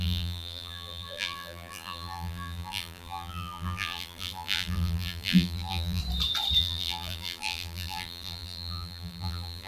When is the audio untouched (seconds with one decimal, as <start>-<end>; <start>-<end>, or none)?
6.0-6.6